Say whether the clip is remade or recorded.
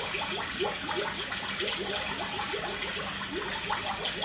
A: recorded